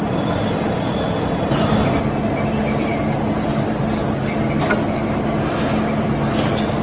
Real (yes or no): yes